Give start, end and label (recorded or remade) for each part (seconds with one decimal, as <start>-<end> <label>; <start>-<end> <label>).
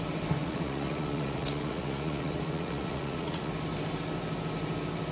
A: 0.0-0.4 recorded; 0.4-3.5 remade; 3.5-5.1 recorded